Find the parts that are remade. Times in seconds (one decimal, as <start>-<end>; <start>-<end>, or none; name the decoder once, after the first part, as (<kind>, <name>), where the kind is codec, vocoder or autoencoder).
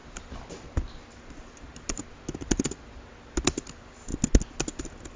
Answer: none